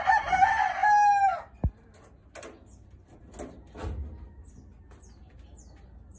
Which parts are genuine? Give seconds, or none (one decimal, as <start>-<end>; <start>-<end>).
0.0-6.2